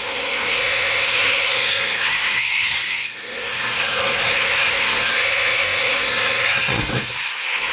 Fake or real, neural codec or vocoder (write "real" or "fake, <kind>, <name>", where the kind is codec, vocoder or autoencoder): fake, codec, SNAC